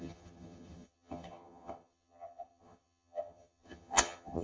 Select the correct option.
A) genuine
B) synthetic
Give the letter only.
B